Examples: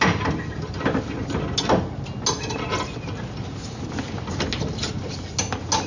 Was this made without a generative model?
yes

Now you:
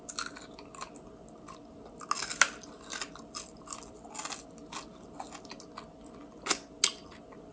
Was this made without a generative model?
yes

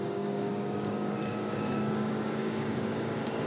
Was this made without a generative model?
no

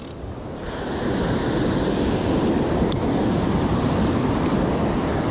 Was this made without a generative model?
no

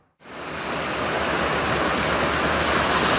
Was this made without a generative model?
yes